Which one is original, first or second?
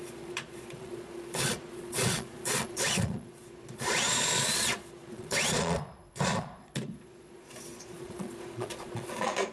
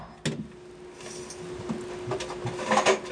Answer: second